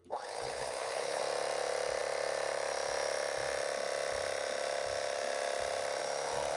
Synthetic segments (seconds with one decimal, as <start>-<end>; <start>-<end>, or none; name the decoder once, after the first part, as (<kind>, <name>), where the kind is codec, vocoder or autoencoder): 0.0-1.2 (codec, HILCodec)

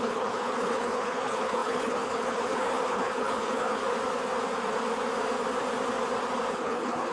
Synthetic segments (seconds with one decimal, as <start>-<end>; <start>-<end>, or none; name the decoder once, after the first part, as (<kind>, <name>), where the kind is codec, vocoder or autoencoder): 0.0-3.8 (codec, HILCodec); 6.5-7.1

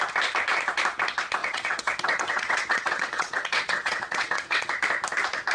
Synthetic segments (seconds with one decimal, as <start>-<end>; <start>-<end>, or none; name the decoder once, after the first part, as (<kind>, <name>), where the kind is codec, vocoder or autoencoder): 1.4-4.7 (vocoder, WaveNeXt)

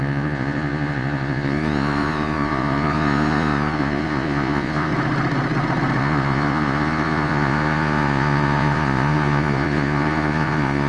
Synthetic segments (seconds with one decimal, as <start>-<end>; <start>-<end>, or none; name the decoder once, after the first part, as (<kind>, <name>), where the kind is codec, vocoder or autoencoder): 0.0-4.9 (vocoder, Vocos); 6.0-10.9

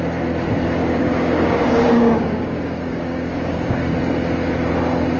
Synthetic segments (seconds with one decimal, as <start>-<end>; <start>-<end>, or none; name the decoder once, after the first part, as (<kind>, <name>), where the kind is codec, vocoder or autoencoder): 0.8-3.9 (codec, DAC)

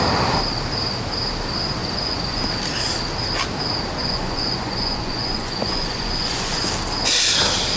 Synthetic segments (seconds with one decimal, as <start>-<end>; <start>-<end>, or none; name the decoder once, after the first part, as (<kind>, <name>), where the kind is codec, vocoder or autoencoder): 1.8-2.4 (vocoder, Vocos); 4.0-6.7